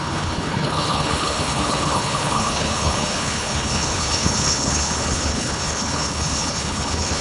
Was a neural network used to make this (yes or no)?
yes